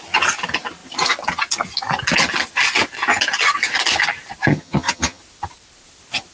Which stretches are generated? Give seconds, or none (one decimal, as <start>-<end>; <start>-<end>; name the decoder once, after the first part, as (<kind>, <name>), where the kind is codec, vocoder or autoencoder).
4.5-5.2 (vocoder, HiFi-GAN)